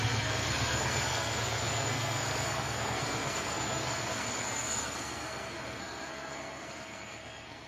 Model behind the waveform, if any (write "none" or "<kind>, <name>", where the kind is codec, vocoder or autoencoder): codec, SNAC